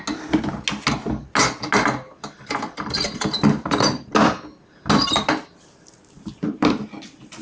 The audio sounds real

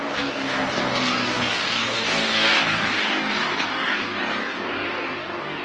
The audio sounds fake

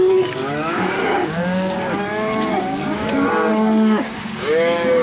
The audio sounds fake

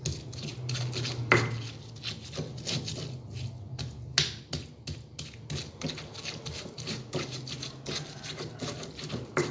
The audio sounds real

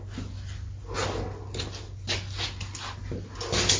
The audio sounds real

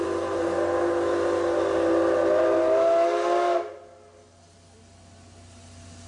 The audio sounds real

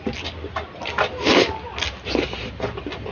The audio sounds real